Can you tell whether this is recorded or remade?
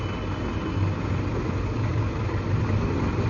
recorded